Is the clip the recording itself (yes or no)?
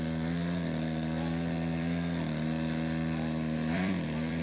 no